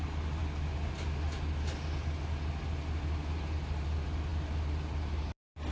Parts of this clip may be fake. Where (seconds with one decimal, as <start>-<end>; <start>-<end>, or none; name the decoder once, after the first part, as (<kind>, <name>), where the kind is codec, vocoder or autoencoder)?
none